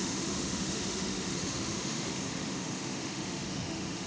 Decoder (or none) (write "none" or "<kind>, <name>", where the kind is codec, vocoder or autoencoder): autoencoder, DAC-VAE